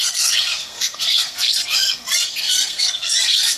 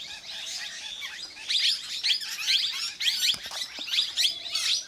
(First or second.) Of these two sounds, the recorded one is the second